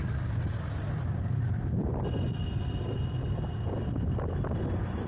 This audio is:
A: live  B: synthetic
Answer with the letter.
A